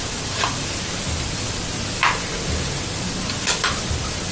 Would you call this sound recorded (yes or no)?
no